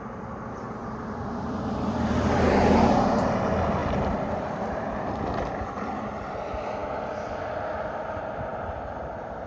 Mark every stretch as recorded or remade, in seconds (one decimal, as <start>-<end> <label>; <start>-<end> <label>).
0.0-0.8 recorded; 0.8-2.6 remade; 2.6-3.8 recorded; 3.8-4.9 remade; 4.9-9.5 recorded